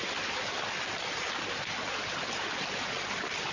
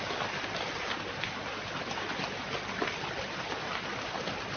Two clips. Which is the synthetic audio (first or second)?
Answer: first